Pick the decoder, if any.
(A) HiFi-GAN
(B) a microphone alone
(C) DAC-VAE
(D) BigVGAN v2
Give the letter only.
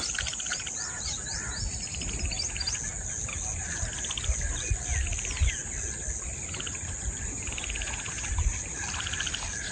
B